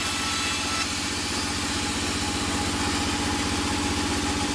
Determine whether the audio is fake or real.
real